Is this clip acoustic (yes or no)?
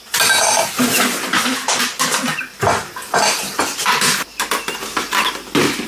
yes